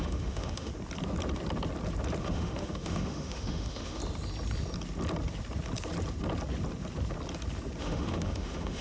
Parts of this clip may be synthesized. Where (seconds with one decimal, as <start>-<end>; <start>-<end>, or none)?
0.0-0.7; 2.2-4.0; 7.8-8.8

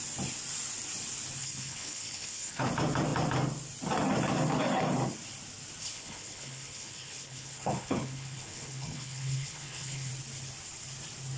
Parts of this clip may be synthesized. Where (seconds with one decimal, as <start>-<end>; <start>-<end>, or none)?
1.4-2.7; 5.8-10.1

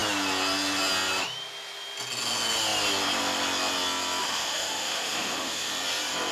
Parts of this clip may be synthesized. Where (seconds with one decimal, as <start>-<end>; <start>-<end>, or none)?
4.2-5.7

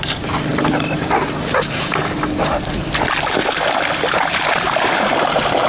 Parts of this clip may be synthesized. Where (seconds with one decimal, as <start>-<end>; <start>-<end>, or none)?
0.5-1.2

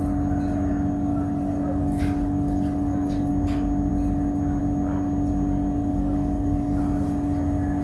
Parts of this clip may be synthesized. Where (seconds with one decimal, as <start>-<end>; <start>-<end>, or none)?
1.1-3.3; 5.8-6.8